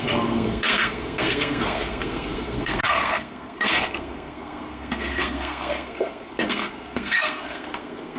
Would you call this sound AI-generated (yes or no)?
yes